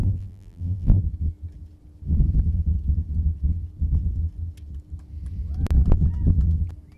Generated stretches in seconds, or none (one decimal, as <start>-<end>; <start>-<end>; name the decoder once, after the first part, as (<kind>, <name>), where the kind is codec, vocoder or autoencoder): 0.0-1.0 (vocoder, BigVGAN v2)